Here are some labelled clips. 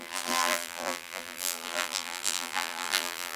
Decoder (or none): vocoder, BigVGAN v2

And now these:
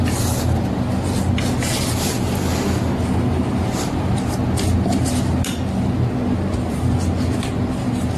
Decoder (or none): none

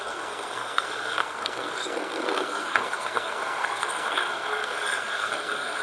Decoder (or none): codec, SNAC